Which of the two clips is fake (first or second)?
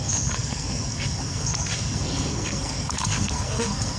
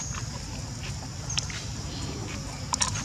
first